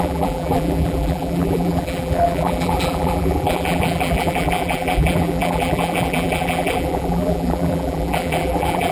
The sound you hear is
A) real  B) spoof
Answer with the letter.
B